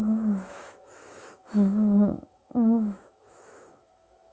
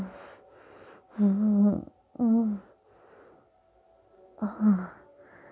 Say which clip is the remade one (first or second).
first